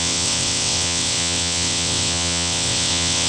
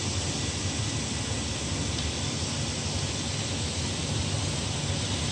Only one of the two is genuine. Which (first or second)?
second